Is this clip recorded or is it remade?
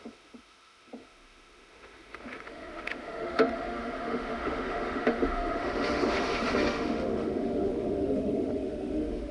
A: remade